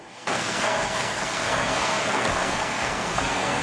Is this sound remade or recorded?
remade